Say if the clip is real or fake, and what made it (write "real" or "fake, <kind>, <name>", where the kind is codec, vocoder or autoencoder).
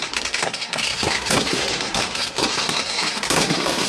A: fake, codec, SNAC